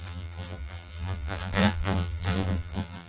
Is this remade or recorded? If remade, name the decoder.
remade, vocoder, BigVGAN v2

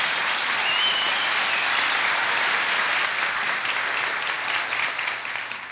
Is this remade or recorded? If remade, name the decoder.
recorded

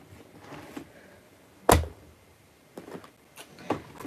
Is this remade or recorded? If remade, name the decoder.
recorded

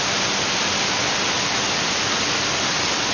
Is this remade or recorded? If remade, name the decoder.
recorded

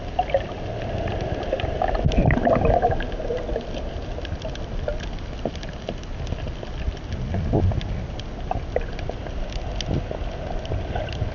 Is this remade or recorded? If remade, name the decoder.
recorded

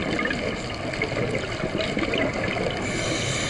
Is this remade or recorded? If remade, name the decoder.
recorded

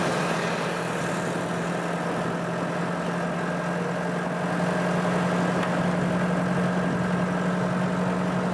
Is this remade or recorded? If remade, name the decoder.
recorded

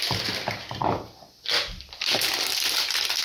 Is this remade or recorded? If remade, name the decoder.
recorded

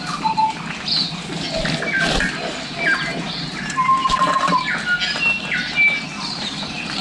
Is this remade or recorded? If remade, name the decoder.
recorded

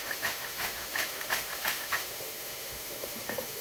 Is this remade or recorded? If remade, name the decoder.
remade, autoencoder, DAC-VAE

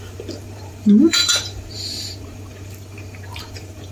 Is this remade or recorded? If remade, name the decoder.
remade, vocoder, BigVGAN v2